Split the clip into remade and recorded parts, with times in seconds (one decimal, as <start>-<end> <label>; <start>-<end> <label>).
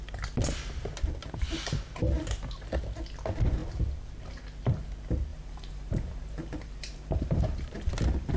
0.0-5.3 recorded; 5.3-8.4 remade